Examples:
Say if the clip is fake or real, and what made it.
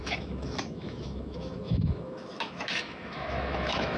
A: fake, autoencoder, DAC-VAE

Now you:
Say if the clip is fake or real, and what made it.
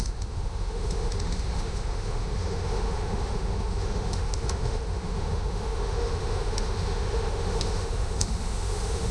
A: fake, autoencoder, DAC-VAE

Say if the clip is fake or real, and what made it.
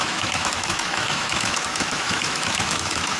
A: fake, autoencoder, DAC-VAE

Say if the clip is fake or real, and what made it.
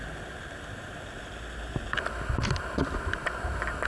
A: real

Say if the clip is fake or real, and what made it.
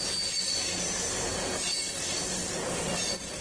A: real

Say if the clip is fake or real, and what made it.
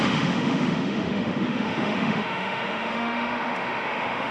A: fake, autoencoder, DAC-VAE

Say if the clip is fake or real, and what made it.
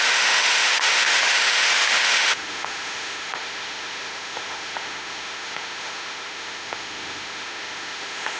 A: fake, autoencoder, DAC-VAE